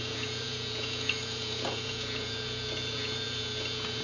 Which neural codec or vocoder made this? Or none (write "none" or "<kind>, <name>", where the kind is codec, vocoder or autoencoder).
vocoder, Vocos